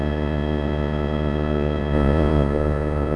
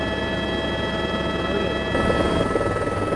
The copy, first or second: first